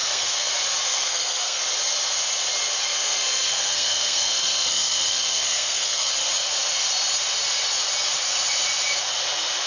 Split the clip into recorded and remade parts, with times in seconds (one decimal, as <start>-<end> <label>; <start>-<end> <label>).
0.0-0.5 remade; 0.5-0.9 recorded; 0.9-1.6 remade; 1.6-2.8 recorded; 2.8-6.1 remade; 6.1-9.7 recorded